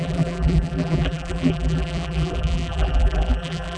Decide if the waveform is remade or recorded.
remade